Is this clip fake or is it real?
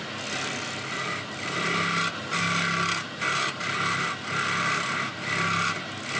real